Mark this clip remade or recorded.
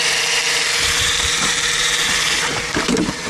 remade